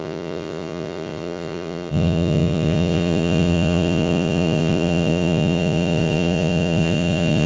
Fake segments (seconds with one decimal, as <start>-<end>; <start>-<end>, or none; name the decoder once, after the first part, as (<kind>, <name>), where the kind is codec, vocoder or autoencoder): 0.0-7.5 (vocoder, Vocos)